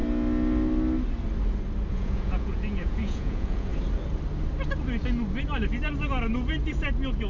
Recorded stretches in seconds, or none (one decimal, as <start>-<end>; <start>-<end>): 0.0-1.9; 3.7-7.3

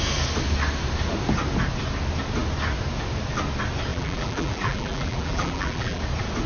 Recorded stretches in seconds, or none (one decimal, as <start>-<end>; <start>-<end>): 0.0-3.9; 6.0-6.5

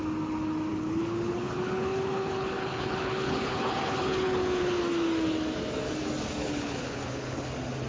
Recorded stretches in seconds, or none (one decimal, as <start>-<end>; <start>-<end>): 0.0-0.7; 4.8-6.4; 7.5-7.9